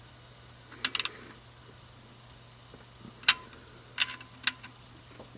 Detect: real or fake real